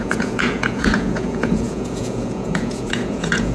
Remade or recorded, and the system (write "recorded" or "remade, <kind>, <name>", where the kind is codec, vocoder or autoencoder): remade, vocoder, Vocos